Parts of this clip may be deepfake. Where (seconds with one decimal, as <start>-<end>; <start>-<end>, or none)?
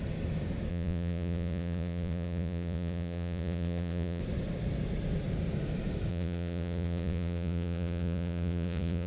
0.7-4.2; 6.1-9.1